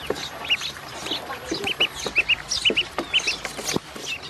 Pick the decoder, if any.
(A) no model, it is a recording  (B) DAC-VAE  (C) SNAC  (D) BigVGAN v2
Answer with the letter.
A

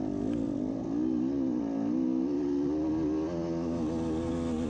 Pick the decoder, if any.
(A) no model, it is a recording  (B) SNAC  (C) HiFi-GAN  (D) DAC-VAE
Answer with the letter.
A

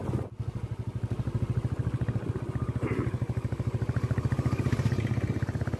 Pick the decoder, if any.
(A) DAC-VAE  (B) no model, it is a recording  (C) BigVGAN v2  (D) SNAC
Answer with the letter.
B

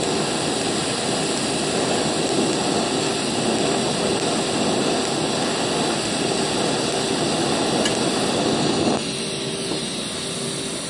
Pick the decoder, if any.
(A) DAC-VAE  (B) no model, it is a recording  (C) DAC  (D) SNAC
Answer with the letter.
B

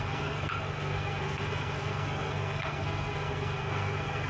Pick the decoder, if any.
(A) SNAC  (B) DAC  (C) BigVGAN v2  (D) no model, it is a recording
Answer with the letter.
A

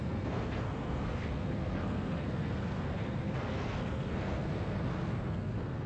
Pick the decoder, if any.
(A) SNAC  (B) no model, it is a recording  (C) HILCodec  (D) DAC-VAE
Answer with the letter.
A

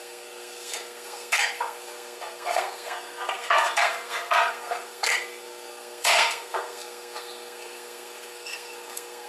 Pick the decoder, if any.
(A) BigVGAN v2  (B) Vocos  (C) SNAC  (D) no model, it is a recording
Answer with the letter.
C